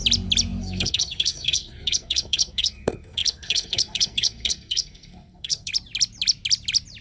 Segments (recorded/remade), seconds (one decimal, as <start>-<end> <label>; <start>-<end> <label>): 0.0-0.6 recorded; 0.6-5.7 remade; 5.7-7.0 recorded